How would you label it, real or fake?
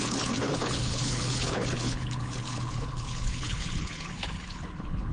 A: fake